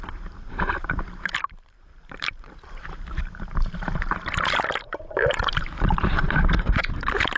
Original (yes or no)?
no